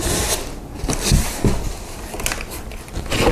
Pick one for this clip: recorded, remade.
recorded